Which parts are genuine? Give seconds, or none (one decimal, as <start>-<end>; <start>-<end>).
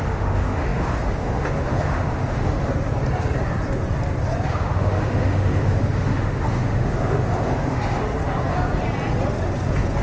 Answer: 2.7-4.5; 8.0-10.0